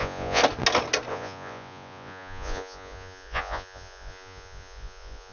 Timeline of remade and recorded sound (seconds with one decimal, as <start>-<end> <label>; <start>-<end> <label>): 0.0-0.4 remade; 0.4-1.1 recorded; 1.1-5.3 remade